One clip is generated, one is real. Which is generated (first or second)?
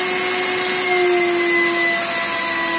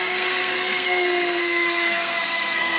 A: second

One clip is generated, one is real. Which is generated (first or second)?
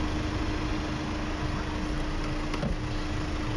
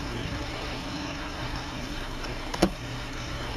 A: second